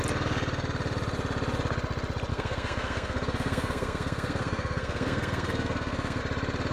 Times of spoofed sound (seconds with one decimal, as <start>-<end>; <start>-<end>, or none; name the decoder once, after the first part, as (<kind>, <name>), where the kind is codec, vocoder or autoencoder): 2.3-6.2 (codec, SNAC)